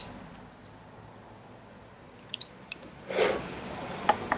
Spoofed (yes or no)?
no